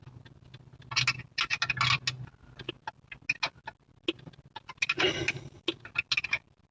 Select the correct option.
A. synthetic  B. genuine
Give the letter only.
B